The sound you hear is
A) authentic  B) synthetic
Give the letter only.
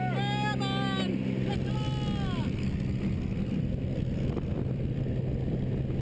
A